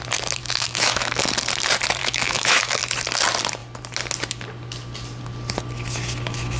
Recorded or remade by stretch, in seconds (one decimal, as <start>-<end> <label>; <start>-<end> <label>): 0.0-0.4 recorded; 0.4-1.3 remade; 1.3-2.0 recorded; 2.0-2.8 remade; 2.8-6.6 recorded